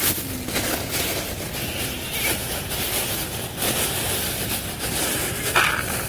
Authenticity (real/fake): real